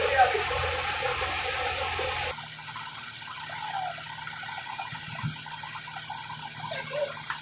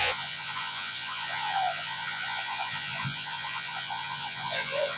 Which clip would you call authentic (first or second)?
first